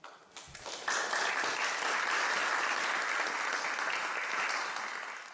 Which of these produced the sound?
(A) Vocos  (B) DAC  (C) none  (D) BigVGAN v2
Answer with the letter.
C